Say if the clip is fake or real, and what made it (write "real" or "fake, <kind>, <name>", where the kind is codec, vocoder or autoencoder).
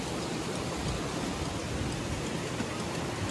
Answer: real